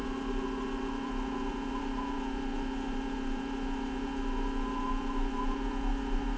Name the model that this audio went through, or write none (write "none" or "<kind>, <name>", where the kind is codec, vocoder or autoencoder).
vocoder, BigVGAN v2